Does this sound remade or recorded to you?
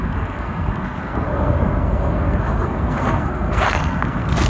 remade